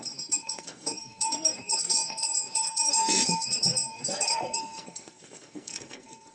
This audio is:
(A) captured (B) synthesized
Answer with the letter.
B